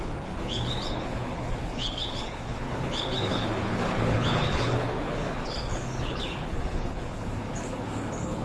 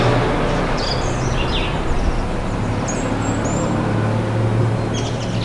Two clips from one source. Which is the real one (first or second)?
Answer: second